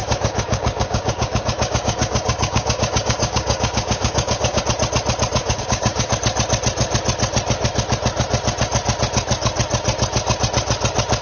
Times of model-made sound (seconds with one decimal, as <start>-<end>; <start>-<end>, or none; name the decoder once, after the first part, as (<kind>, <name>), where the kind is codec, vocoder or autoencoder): 0.0-4.6 (codec, DAC); 5.4-6.1